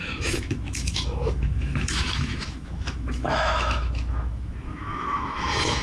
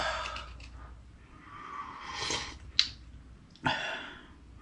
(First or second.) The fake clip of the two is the first